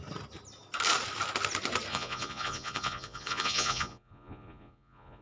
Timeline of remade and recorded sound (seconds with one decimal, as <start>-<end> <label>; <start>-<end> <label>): 0.0-1.9 recorded; 1.9-5.2 remade